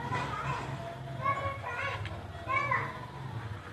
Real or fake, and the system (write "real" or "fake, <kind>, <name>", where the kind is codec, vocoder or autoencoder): real